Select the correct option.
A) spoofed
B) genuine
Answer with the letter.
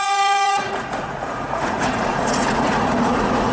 A